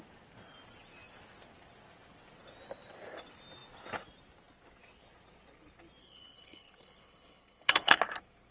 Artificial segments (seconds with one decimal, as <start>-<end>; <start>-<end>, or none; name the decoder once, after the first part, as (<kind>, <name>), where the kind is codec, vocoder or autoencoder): 6.0-8.0 (codec, HILCodec)

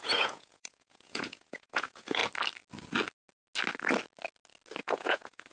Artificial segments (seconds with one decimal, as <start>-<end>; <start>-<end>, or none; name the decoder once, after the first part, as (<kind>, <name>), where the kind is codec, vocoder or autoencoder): 0.0-2.2 (vocoder, Vocos); 4.8-5.5

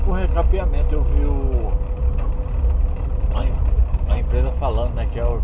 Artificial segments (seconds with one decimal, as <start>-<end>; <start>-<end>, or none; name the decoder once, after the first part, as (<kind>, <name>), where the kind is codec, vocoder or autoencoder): 1.7-3.8 (vocoder, BigVGAN v2)

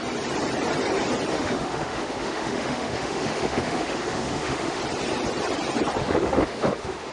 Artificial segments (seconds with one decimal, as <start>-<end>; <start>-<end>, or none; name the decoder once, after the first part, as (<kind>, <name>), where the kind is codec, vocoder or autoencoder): 1.3-4.8 (autoencoder, DAC-VAE); 6.0-7.1

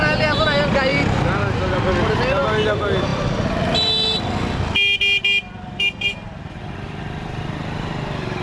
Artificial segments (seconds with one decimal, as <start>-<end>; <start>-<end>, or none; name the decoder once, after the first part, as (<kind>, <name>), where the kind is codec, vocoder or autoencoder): none

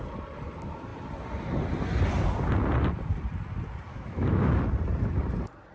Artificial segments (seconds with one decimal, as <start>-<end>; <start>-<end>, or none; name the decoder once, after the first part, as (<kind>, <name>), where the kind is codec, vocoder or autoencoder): 3.9-4.6 (autoencoder, DAC-VAE)

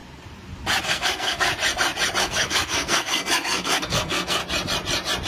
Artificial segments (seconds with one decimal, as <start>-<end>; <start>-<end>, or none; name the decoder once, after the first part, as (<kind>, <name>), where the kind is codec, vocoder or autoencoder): 0.8-1.5 (codec, SNAC); 2.2-4.4

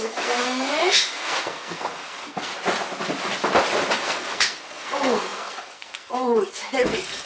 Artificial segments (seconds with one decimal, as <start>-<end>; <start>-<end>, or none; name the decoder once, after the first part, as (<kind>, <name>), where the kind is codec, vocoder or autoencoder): 0.0-2.5 (codec, SNAC); 3.9-7.3